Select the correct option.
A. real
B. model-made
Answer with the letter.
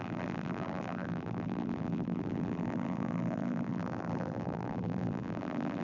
B